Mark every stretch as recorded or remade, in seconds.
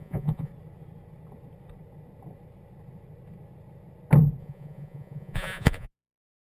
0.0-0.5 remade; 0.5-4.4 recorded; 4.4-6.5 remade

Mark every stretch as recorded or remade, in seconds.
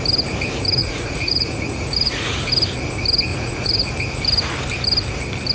0.0-0.8 recorded; 0.8-2.5 remade; 2.5-3.3 recorded; 3.3-3.9 remade; 3.9-5.5 recorded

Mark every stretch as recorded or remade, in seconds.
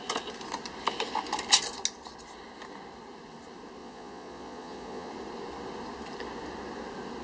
0.0-3.8 recorded; 3.8-5.1 remade; 5.1-7.2 recorded